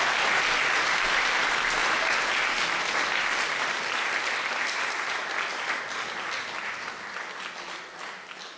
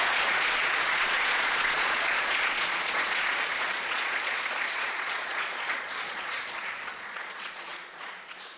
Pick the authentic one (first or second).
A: first